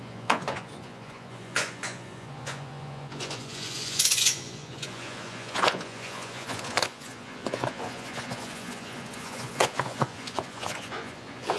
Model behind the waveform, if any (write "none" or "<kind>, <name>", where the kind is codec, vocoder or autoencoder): vocoder, Vocos